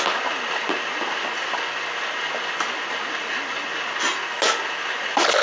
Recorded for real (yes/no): yes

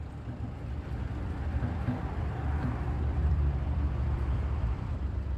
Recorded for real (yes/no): no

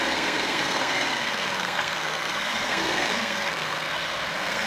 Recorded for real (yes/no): no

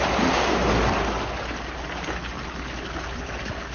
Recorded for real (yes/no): yes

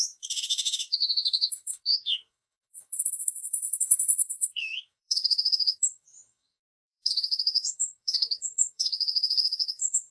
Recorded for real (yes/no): no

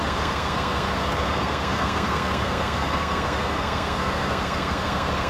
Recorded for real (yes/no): no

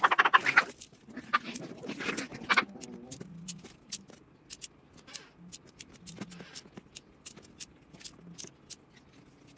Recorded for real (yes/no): yes